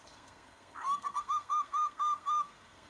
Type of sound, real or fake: fake